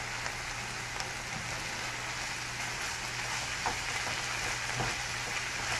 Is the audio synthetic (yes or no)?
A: no